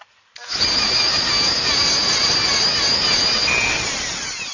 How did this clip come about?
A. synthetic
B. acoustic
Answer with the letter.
B